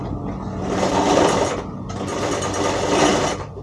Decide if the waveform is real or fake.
real